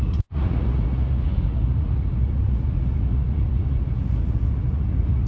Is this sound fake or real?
fake